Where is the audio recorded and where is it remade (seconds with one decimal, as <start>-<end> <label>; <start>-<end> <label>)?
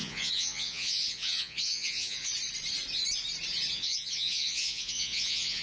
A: 0.0-2.3 remade; 2.3-3.7 recorded; 3.7-5.6 remade